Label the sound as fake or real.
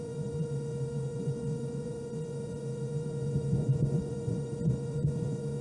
fake